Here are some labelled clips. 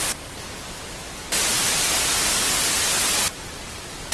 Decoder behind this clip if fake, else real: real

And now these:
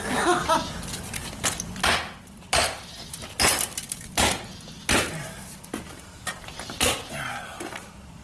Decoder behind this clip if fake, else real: real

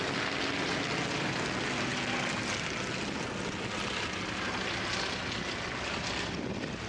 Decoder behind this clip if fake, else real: real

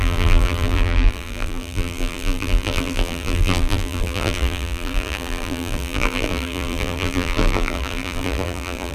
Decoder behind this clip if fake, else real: fake, vocoder, BigVGAN v2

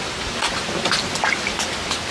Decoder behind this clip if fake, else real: real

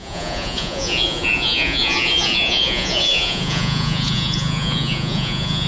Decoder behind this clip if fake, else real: fake, vocoder, Vocos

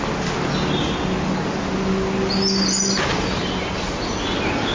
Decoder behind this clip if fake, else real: real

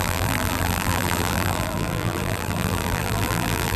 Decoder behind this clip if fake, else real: fake, vocoder, BigVGAN v2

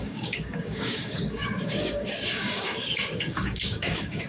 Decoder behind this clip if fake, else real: fake, codec, DAC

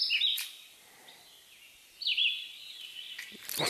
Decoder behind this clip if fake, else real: real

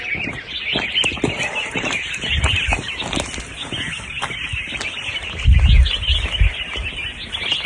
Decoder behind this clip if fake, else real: real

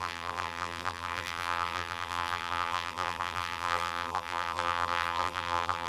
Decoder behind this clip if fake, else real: fake, vocoder, BigVGAN v2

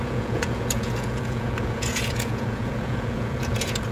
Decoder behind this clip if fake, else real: fake, vocoder, Vocos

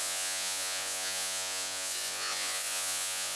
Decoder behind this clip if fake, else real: fake, vocoder, Vocos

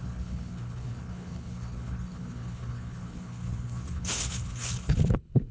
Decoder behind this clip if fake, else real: fake, codec, HILCodec